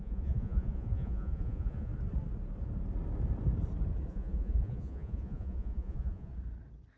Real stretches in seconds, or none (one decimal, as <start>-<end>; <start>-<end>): 1.9-4.1; 6.3-7.0